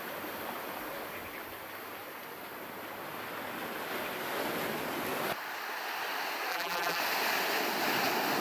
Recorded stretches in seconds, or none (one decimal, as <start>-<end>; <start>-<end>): 0.0-6.5; 7.0-8.4